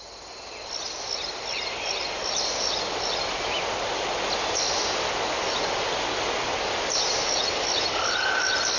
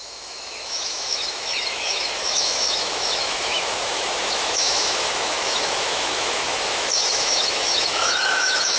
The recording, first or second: first